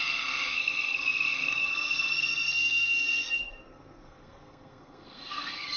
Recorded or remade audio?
remade